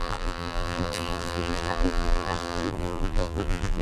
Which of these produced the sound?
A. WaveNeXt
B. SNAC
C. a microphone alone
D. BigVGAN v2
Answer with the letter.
D